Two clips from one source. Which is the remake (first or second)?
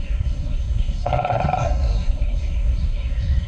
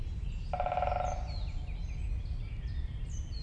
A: first